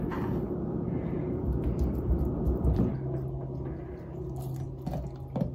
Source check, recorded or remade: recorded